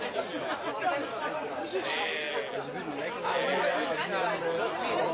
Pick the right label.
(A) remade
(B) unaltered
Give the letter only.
B